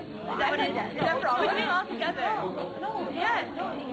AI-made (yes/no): no